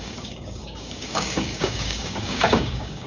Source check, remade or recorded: remade